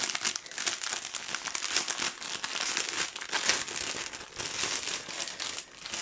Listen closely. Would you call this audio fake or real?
real